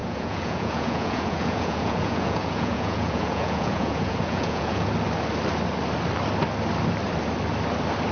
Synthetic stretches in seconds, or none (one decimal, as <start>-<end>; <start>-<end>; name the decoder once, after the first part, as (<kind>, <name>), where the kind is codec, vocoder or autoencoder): 0.0-4.9 (vocoder, Vocos)